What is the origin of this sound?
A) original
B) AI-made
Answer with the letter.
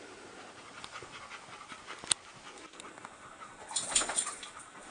A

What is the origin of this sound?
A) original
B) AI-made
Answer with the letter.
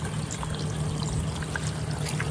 A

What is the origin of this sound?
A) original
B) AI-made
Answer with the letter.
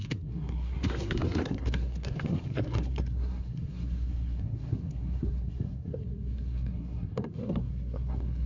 B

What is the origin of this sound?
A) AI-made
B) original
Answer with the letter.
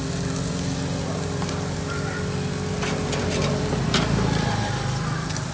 B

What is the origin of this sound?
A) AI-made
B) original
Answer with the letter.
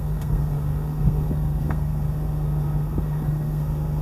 A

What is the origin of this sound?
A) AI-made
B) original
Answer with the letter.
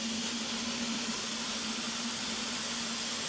B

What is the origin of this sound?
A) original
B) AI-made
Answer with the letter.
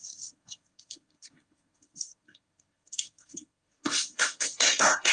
B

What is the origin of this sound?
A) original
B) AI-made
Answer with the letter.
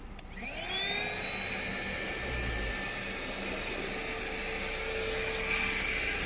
A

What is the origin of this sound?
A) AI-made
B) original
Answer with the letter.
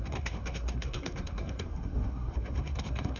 A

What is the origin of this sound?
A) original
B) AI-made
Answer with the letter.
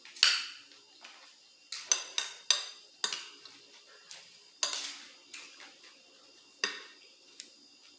A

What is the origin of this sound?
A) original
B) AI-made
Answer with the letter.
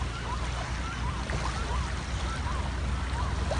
A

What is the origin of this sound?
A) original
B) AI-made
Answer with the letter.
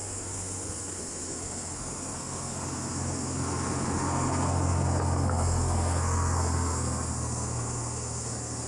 B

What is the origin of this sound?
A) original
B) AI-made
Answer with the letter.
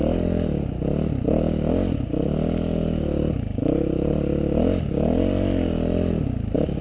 A